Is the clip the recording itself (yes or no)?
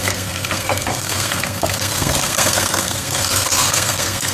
no